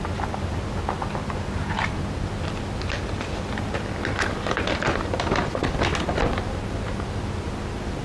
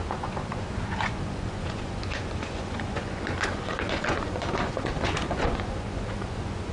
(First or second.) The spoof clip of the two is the second